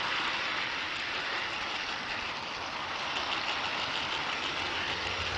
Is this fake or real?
real